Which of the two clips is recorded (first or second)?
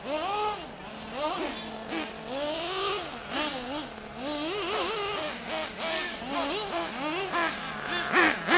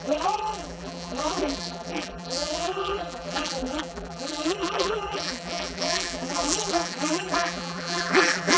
first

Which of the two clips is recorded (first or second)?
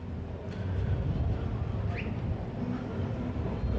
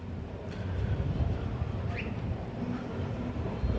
first